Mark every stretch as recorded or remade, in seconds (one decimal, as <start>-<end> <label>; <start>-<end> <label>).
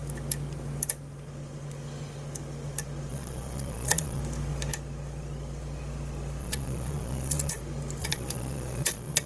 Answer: 0.0-3.1 recorded; 3.1-4.2 remade; 4.2-6.4 recorded; 6.4-7.6 remade; 7.6-8.0 recorded; 8.0-9.3 remade